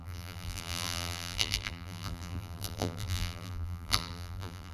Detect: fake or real fake